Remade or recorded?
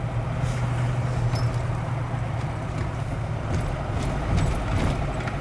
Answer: recorded